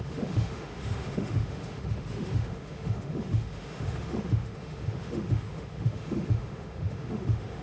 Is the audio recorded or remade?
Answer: remade